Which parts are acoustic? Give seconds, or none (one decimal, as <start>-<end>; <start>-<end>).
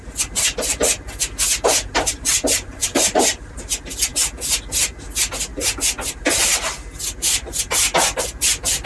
0.0-2.8; 3.5-8.9